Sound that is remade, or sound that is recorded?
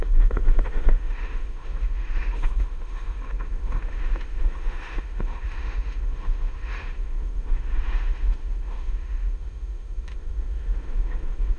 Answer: remade